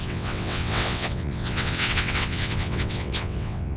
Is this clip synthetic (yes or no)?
yes